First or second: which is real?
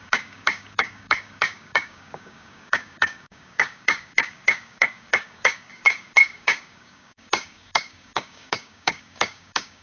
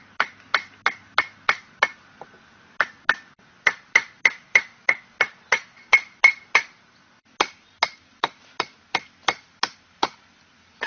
second